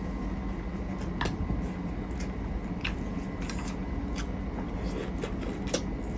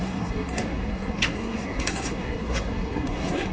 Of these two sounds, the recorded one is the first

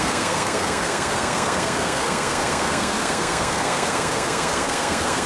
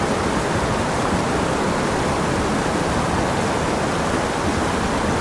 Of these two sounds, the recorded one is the second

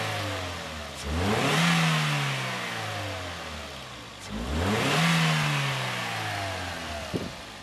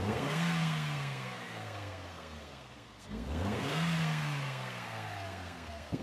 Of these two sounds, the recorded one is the first